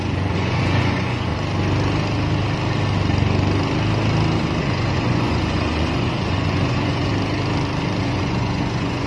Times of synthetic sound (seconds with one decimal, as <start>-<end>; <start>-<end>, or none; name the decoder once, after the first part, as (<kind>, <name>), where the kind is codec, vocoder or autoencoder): 0.0-1.3 (vocoder, Vocos); 4.6-7.1; 8.0-9.1

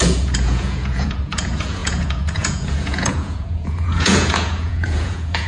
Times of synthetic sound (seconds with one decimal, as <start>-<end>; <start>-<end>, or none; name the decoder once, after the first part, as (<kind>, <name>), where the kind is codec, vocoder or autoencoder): 0.0-5.5 (vocoder, Vocos)

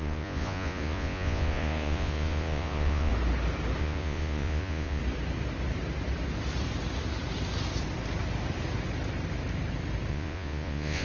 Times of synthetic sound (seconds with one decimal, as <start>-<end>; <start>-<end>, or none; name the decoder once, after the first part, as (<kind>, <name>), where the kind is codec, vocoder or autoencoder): 0.0-3.1 (vocoder, Vocos); 3.8-5.0; 10.1-11.0

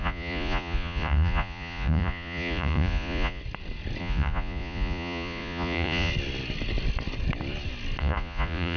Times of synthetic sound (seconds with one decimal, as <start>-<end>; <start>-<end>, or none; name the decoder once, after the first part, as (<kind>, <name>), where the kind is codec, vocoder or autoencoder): 0.0-3.4 (vocoder, Vocos); 4.0-6.1; 8.0-8.8

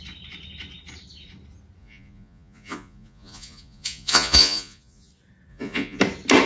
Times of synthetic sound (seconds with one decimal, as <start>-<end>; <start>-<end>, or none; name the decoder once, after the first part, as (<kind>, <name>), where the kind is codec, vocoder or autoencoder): 1.8-5.1 (vocoder, Vocos); 5.5-6.0